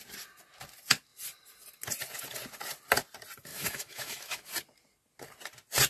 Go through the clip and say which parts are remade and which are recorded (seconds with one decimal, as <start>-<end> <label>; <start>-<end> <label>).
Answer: 0.0-3.5 recorded; 3.5-4.5 remade; 4.5-5.9 recorded